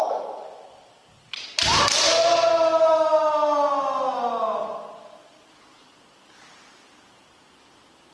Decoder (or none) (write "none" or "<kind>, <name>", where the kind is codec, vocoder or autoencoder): none